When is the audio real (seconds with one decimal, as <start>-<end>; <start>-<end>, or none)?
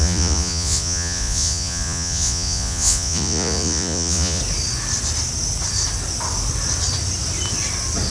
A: 4.4-8.1